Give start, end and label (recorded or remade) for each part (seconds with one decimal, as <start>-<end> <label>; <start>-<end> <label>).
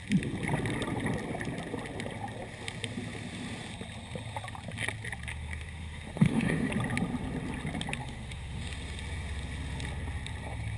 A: 0.0-5.3 recorded; 5.3-6.7 remade; 6.7-8.0 recorded; 8.0-8.6 remade; 8.6-10.8 recorded